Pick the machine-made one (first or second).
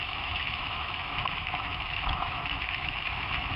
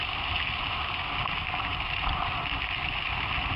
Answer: first